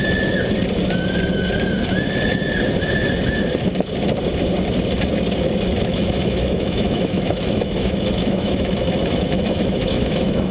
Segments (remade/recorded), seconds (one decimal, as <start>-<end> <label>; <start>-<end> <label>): 0.0-5.8 recorded; 5.8-10.5 remade